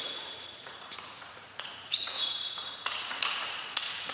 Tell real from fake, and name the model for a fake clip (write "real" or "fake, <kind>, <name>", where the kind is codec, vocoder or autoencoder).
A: fake, vocoder, Vocos